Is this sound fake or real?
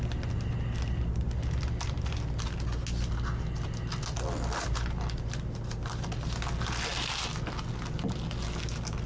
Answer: real